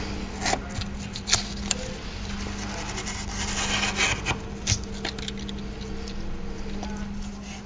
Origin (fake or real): real